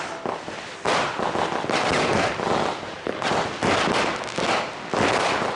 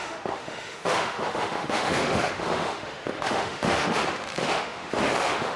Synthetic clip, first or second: second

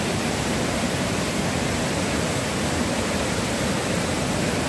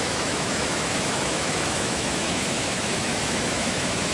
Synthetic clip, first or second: second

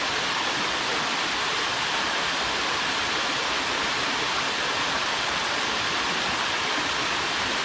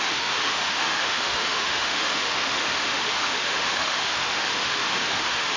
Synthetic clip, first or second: second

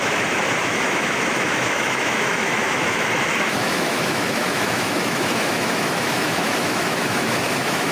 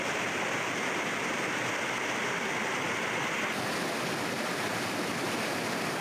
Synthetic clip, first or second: first